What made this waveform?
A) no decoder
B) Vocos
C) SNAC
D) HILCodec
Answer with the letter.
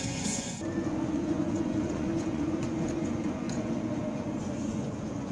B